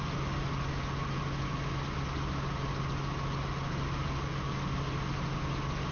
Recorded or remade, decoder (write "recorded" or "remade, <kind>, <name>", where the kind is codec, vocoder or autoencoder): recorded